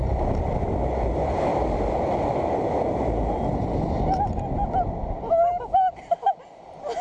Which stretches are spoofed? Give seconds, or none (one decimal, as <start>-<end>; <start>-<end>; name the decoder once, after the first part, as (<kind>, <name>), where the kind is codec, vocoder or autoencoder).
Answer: 1.5-5.7 (vocoder, BigVGAN v2)